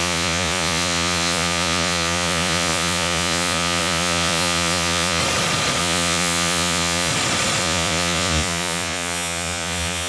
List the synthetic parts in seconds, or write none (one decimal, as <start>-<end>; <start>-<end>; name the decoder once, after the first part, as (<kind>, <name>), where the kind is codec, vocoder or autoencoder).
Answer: 0.0-5.2 (vocoder, Vocos); 5.8-7.1; 7.6-10.1